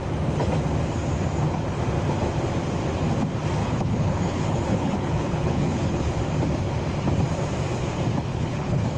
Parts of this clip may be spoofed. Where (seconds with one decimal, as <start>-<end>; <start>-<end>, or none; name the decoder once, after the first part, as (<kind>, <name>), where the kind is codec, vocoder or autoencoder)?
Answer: 3.6-6.2 (codec, HILCodec); 8.3-9.0